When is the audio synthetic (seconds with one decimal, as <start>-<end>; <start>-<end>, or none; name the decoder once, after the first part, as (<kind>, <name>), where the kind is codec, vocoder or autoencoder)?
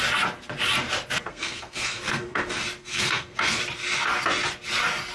1.3-2.4 (codec, SNAC); 2.8-3.6